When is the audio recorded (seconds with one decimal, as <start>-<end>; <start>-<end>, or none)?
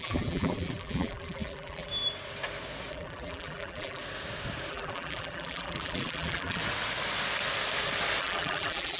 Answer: 1.9-2.9; 4.0-4.7; 6.6-8.2